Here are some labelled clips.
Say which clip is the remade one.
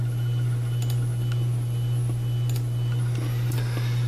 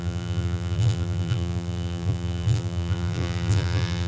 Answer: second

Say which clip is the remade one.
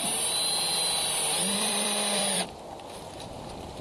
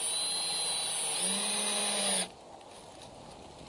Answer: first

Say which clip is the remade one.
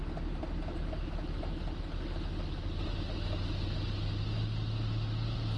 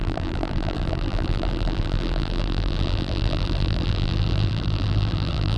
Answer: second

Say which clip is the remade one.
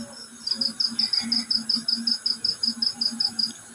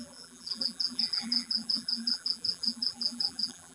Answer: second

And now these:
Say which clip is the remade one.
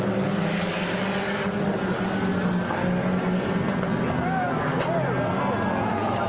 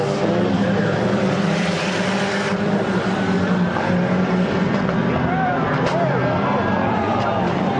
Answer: second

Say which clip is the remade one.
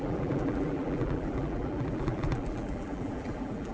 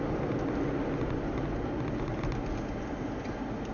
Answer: first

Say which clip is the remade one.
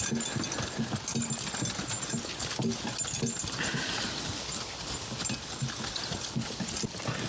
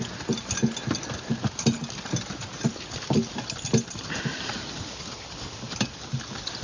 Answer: second